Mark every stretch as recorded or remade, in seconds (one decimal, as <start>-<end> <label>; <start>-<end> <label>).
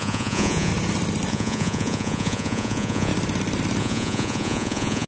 0.0-0.7 remade; 0.7-1.3 recorded; 1.3-3.1 remade; 3.1-3.8 recorded; 3.8-5.1 remade